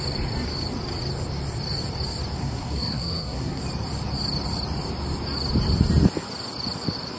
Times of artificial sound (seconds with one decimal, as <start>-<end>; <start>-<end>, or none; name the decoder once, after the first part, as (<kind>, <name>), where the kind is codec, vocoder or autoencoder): 2.4-3.6 (codec, SNAC)